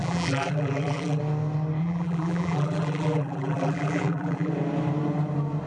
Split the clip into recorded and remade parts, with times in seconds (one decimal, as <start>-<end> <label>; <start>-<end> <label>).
0.0-1.2 remade; 1.2-1.8 recorded; 1.8-4.5 remade; 4.5-5.7 recorded